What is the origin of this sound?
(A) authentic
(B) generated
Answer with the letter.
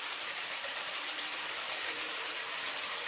B